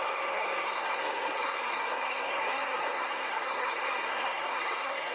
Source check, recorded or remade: remade